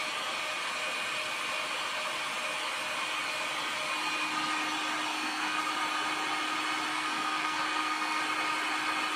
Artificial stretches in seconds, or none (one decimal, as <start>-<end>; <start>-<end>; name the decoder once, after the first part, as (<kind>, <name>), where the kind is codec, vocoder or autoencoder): 5.1-5.6 (codec, SNAC); 6.9-8.2